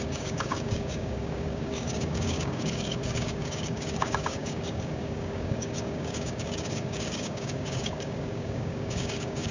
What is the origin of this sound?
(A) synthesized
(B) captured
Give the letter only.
A